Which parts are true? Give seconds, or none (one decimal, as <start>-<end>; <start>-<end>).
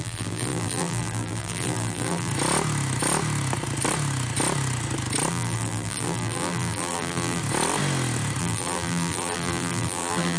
2.3-5.3; 7.4-8.4